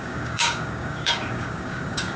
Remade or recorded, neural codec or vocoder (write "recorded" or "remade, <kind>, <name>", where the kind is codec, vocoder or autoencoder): remade, codec, DAC